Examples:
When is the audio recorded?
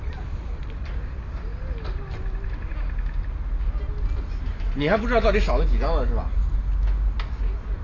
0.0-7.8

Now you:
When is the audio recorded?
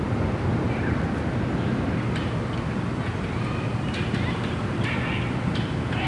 0.0-6.1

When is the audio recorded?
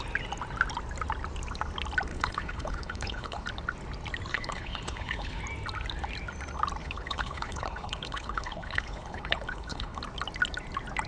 0.0-2.1; 3.5-4.3; 5.4-6.8; 10.0-11.1